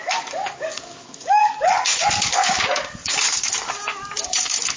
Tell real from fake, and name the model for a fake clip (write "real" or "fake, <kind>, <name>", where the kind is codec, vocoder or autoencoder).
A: fake, codec, DAC